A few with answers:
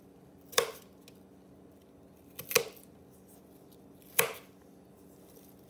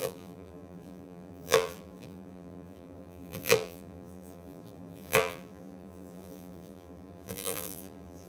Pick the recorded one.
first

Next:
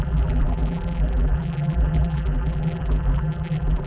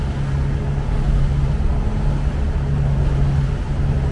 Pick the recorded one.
second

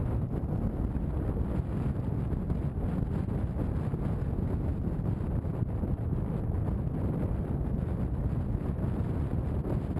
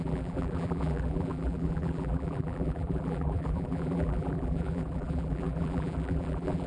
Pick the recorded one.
first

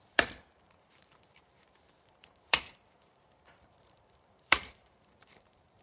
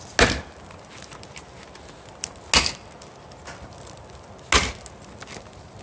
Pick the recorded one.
second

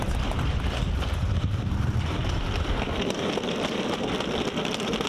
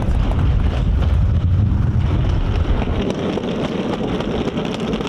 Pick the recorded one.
second